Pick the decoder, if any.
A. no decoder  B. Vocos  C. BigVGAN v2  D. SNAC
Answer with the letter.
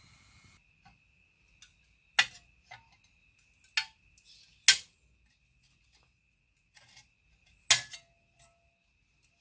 A